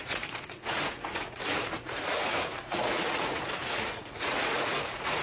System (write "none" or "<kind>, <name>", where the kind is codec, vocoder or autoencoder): vocoder, Vocos